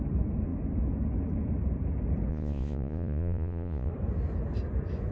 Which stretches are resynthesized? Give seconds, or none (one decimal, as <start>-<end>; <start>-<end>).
2.3-3.9